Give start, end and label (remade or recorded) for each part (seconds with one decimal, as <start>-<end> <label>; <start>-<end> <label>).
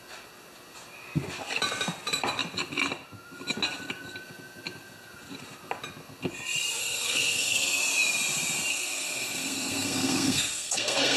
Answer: 0.0-6.8 recorded; 6.8-7.8 remade; 7.8-8.7 recorded; 8.7-11.2 remade